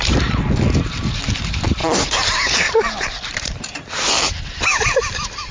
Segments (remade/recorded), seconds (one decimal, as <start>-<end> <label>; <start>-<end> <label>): 0.0-1.1 remade; 1.1-1.8 recorded; 1.8-5.1 remade; 5.1-5.5 recorded